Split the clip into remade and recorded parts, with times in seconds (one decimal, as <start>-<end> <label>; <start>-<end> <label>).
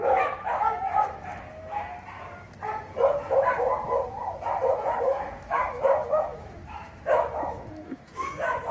0.0-1.9 remade; 1.9-5.0 recorded; 5.0-8.7 remade